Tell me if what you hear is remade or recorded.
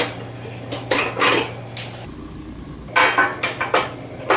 recorded